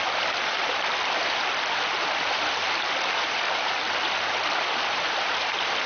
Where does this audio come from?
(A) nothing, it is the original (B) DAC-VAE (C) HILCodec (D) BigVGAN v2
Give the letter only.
D